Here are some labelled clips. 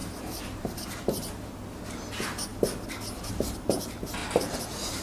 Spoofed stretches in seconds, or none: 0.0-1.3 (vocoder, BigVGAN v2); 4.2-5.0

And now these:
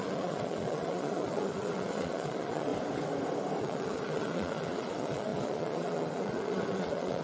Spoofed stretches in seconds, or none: 0.0-2.7 (vocoder, Vocos); 3.6-7.2

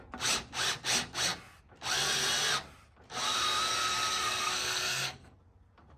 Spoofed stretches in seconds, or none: 4.1-5.4 (codec, SNAC)

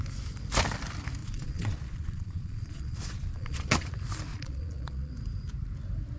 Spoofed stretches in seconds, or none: 1.2-3.9 (vocoder, Vocos); 4.3-5.1

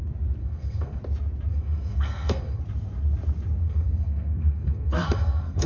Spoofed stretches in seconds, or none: 0.4-1.0 (codec, SNAC); 1.5-2.6; 3.6-5.7

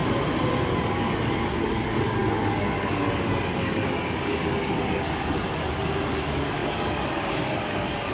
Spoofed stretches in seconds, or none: 0.7-8.1 (codec, DAC)